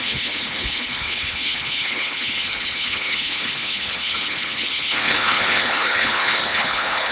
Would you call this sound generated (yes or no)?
yes